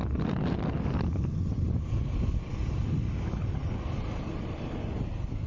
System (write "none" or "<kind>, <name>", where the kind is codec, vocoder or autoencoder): none